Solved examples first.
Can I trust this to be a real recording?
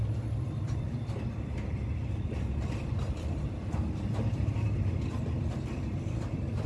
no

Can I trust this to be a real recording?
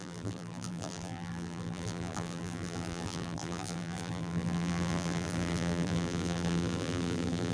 no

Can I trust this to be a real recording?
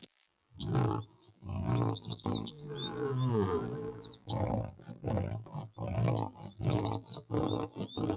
no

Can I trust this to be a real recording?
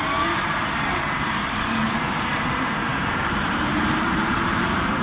no